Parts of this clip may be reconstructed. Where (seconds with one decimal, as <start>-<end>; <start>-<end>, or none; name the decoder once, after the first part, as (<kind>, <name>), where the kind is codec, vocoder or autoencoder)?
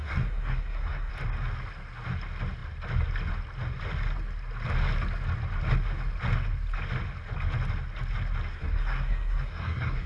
0.0-1.1 (codec, SNAC); 8.5-10.1